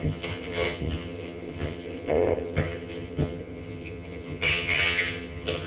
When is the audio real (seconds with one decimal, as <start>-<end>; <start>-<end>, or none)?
none